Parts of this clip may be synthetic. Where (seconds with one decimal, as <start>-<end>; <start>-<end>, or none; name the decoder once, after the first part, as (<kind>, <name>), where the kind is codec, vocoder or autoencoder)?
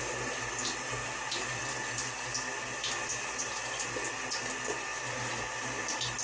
none